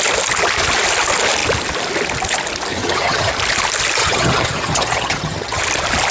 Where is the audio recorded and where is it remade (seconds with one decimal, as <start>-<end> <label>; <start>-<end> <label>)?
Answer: 0.0-2.7 recorded; 2.7-3.3 remade; 3.3-4.0 recorded; 4.0-5.6 remade; 5.6-6.1 recorded

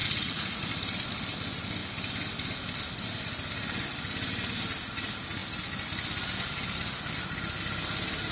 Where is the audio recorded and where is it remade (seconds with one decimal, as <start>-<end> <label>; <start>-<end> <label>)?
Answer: 0.0-0.7 remade; 0.7-8.3 recorded